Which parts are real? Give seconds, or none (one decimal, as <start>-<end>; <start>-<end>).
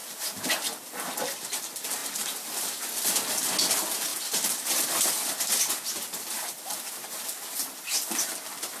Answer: 0.0-8.8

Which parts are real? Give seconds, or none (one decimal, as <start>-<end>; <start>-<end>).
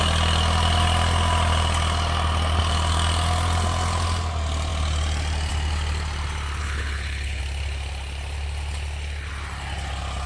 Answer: 0.0-6.6; 7.4-10.3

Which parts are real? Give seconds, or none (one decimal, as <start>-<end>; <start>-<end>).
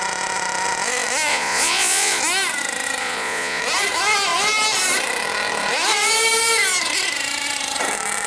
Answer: 0.0-1.3; 2.2-3.0; 3.6-8.3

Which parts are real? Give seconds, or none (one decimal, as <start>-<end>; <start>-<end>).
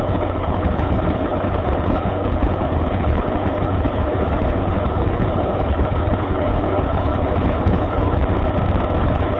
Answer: 8.2-9.0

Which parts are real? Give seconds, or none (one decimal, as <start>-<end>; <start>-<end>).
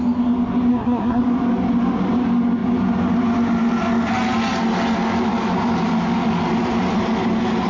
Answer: 0.0-0.7; 1.2-7.7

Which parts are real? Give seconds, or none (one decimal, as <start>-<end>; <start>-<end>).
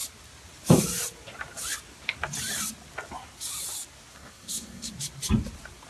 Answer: 0.0-4.1; 4.9-5.9